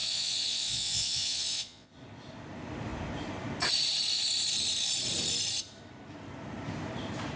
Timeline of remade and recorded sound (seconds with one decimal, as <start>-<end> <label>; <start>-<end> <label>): 0.0-1.9 remade; 1.9-7.4 recorded